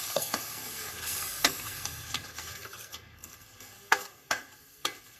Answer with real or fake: fake